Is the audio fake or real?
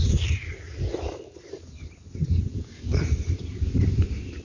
real